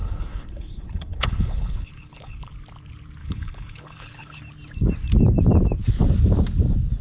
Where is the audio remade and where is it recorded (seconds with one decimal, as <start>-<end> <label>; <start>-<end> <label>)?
0.0-2.5 remade; 2.5-3.2 recorded; 3.2-4.4 remade; 4.4-7.0 recorded